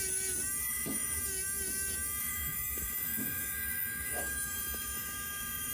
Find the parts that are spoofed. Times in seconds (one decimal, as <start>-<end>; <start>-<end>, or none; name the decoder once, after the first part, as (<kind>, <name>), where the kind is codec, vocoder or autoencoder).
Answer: 0.6-1.2 (autoencoder, DAC-VAE); 2.2-5.7